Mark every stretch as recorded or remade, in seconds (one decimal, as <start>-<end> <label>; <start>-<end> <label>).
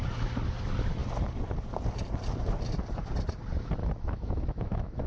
0.0-3.8 recorded; 3.8-5.1 remade